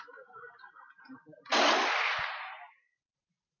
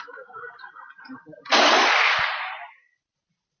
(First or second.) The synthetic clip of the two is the second